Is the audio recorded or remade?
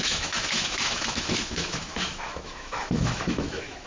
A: remade